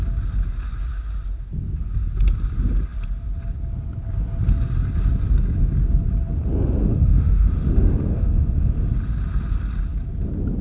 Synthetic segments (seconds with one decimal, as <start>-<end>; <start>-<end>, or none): 6.8-8.9